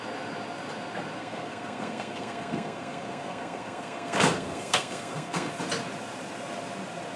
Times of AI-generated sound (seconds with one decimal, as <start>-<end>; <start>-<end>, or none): 1.2-5.5